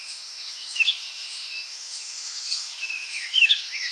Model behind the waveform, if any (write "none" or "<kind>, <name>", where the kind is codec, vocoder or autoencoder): autoencoder, DAC-VAE